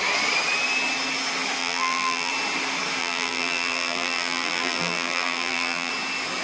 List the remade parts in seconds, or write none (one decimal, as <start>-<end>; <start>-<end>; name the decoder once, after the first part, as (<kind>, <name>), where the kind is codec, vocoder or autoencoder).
1.6-2.3 (vocoder, BigVGAN v2); 3.0-5.9

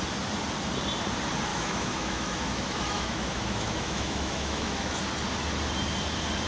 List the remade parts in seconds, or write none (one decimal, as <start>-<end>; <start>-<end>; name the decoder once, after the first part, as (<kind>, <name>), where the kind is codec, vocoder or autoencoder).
1.5-5.0 (autoencoder, DAC-VAE)

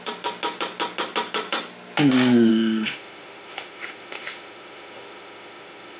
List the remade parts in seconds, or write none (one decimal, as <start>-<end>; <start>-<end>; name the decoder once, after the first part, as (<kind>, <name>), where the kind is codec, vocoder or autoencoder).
2.5-6.0 (autoencoder, DAC-VAE)

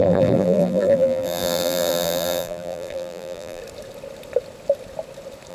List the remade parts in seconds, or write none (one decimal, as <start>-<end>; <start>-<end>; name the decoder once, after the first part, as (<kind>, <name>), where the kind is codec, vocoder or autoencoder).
0.0-3.6 (vocoder, BigVGAN v2)

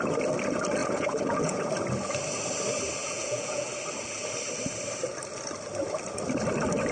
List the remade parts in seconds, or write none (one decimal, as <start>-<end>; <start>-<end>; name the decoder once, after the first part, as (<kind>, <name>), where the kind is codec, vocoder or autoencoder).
0.8-1.7 (vocoder, Vocos); 3.0-3.7

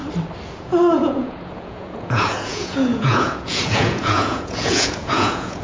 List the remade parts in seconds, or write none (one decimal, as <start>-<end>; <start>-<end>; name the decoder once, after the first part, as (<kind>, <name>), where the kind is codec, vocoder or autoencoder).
0.6-5.6 (vocoder, Vocos)